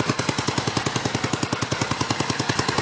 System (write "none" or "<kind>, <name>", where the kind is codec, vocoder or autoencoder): none